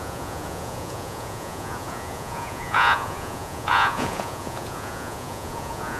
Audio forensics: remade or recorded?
remade